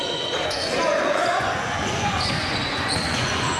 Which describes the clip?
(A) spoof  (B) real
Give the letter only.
A